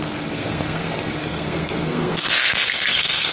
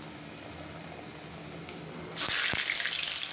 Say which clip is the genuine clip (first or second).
second